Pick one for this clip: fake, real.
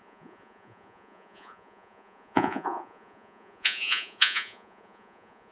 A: fake